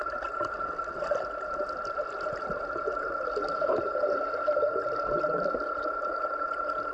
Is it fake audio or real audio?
real